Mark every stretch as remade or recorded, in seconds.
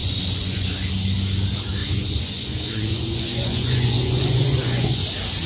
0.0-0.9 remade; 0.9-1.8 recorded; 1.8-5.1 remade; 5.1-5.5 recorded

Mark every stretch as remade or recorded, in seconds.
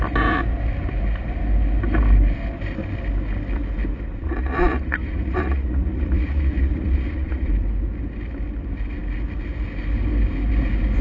0.0-4.1 recorded; 4.1-7.5 remade; 7.5-11.0 recorded